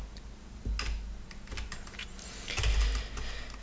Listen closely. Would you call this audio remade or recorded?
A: recorded